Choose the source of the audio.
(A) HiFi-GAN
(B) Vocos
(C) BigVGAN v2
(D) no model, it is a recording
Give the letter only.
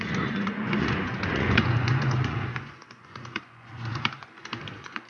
B